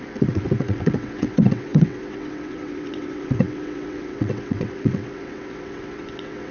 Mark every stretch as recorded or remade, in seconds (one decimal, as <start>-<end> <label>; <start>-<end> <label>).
0.0-6.5 remade